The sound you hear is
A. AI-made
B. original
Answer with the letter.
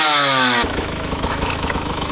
A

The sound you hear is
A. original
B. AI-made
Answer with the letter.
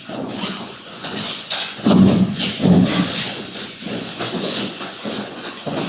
B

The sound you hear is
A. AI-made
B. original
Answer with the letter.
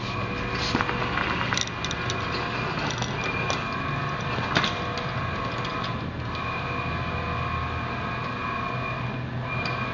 B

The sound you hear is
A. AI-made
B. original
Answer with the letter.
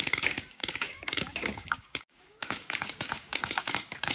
A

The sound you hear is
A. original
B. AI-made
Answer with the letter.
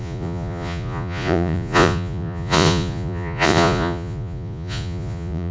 B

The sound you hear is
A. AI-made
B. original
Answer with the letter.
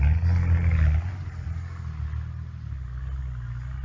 B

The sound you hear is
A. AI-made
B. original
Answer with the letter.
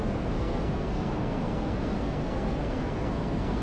A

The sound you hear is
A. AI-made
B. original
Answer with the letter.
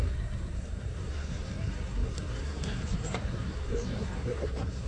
A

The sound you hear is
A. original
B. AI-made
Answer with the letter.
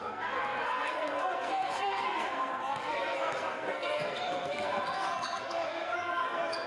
B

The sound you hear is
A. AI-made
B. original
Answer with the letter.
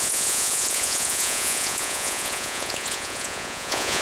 A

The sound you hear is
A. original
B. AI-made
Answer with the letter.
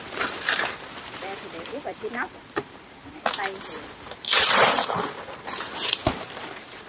B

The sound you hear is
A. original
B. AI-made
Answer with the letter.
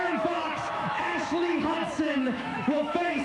B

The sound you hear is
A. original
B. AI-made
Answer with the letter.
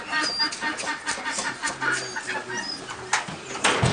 A